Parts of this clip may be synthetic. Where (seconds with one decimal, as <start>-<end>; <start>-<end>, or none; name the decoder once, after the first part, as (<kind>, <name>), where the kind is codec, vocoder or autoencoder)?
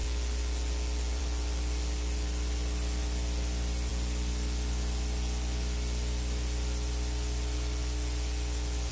none